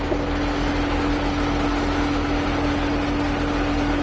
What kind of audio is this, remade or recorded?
recorded